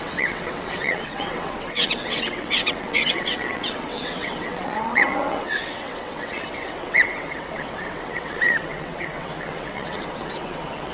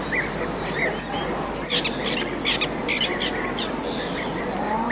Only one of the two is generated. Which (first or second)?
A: first